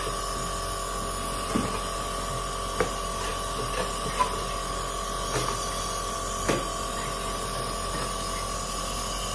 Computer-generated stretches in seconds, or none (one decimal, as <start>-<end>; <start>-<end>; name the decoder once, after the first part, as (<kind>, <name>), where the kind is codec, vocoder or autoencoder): none